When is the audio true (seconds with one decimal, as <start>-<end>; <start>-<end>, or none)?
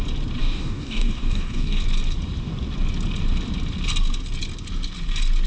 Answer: 0.0-0.4; 1.8-5.5